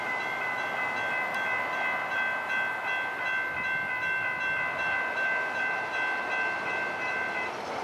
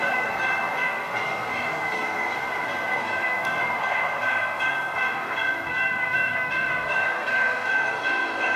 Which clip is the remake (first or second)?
second